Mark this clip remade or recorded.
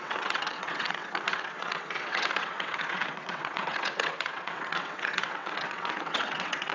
remade